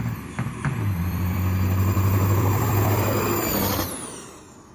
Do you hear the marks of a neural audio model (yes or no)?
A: yes